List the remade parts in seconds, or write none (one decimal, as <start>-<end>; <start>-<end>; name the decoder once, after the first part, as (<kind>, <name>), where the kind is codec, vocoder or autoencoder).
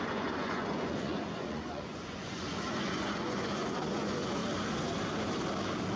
0.0-4.4 (vocoder, Vocos)